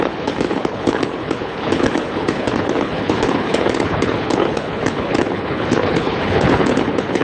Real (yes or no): no